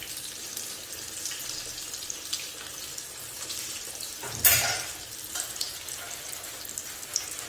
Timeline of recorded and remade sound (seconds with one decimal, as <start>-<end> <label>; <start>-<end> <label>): 0.0-3.2 recorded; 3.2-4.8 remade; 4.8-7.5 recorded